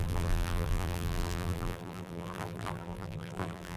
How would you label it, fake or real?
fake